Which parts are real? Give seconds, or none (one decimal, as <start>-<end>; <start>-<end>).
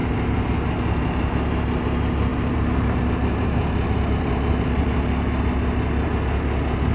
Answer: 0.0-2.3; 4.8-6.9